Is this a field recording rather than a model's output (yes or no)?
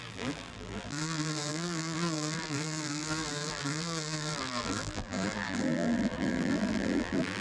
no